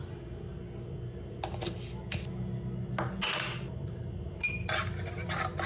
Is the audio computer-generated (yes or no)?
no